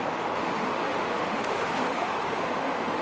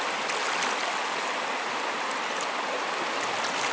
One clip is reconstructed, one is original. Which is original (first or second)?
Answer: second